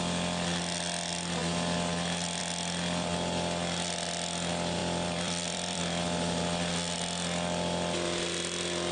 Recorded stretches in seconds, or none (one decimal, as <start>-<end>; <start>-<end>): 0.0-4.8; 5.8-8.9